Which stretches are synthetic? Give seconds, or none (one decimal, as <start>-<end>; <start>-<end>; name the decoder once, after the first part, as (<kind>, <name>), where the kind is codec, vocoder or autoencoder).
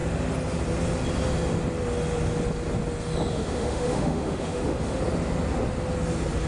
3.3-5.0 (autoencoder, DAC-VAE)